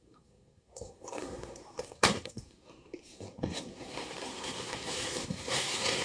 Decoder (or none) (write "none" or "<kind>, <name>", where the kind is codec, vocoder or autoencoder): codec, SNAC